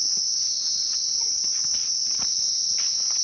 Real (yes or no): yes